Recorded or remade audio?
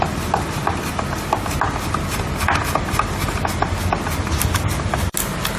recorded